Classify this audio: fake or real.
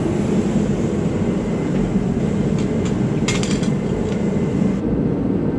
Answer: real